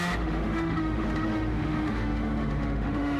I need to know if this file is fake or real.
fake